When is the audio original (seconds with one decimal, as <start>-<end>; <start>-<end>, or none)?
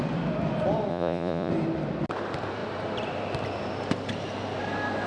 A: 0.0-0.9; 1.5-5.1